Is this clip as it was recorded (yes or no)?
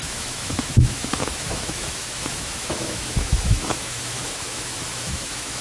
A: no